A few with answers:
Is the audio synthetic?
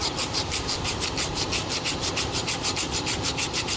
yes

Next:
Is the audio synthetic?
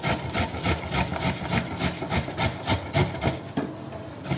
no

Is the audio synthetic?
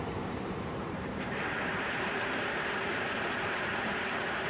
yes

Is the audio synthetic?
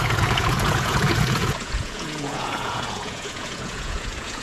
yes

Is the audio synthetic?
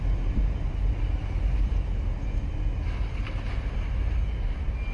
no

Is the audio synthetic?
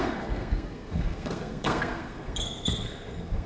yes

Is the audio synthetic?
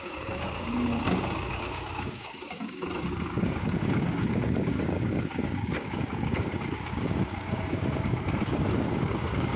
yes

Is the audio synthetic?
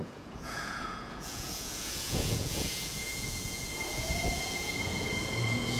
yes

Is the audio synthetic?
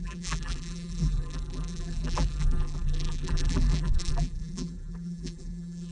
yes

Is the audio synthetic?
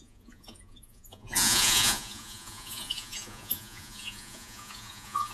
yes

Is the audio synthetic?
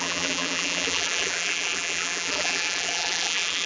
yes